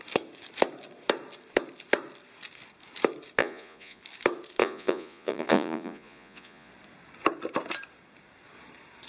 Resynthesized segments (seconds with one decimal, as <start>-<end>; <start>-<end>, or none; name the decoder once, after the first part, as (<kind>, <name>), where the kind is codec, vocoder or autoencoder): 3.4-4.0 (vocoder, Vocos); 4.6-6.7